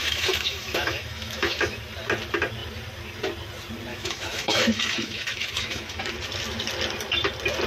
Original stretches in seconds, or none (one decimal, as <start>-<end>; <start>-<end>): 1.8-3.9; 6.0-7.7